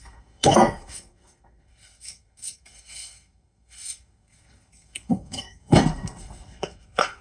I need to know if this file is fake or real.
fake